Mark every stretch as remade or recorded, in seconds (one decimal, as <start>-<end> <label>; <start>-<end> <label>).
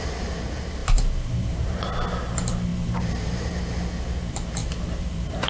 0.0-0.8 recorded; 0.8-1.9 remade; 1.9-2.7 recorded; 2.7-3.5 remade; 3.5-4.6 recorded; 4.6-5.5 remade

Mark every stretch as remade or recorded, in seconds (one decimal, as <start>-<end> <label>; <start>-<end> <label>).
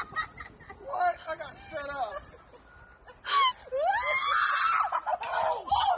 0.0-6.0 recorded